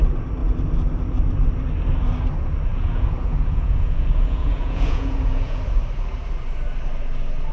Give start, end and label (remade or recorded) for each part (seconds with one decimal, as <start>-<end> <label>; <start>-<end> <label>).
0.0-2.7 recorded; 2.7-5.6 remade; 5.6-7.5 recorded